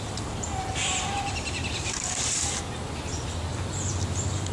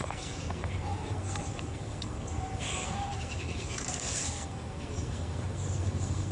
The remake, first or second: second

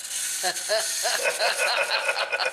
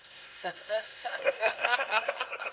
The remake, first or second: second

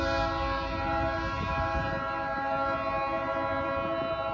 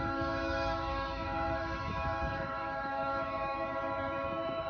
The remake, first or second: second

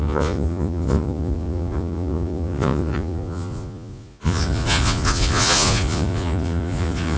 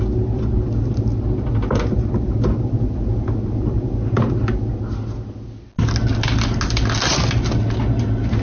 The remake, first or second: first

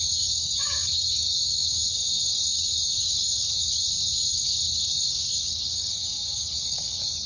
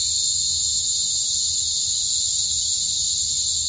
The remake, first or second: first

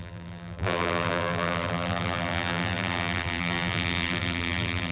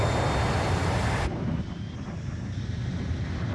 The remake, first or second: first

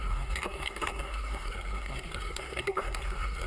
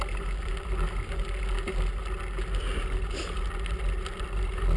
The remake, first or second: first